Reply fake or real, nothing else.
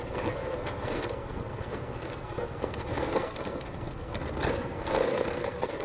fake